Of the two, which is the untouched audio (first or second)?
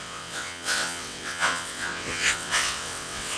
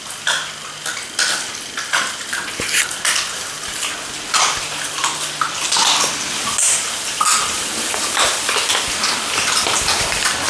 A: second